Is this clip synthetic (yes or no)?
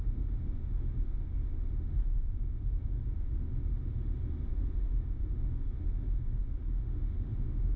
yes